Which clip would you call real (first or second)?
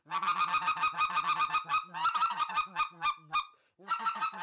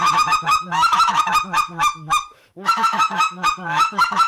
first